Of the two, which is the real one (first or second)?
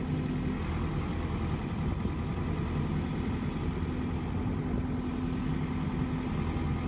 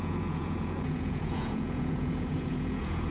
first